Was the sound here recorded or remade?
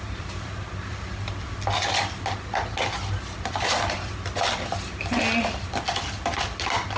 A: recorded